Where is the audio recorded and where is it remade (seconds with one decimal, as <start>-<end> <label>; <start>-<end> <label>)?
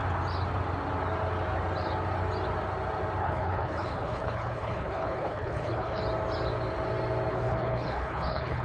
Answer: 0.0-3.2 recorded; 3.2-6.0 remade; 6.0-7.3 recorded; 7.3-8.6 remade